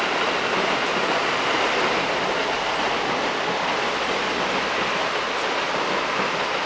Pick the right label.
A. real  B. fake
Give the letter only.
A